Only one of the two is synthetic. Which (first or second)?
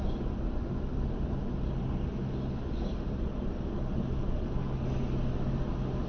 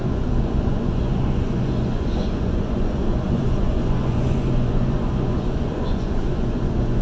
second